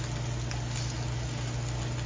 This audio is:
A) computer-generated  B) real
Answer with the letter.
B